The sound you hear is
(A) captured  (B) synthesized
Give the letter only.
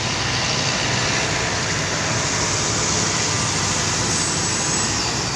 A